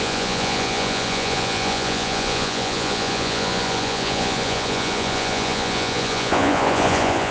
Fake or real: fake